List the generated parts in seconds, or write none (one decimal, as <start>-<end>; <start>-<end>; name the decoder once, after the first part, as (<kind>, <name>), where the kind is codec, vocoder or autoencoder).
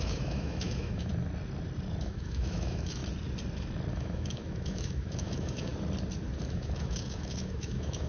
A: 0.0-1.1 (autoencoder, DAC-VAE); 2.0-3.0; 3.9-5.7; 6.4-8.1